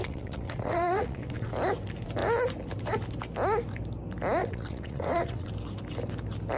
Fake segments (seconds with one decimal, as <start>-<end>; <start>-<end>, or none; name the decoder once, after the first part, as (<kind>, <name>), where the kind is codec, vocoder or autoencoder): 0.0-1.5 (vocoder, WaveNeXt); 4.4-5.5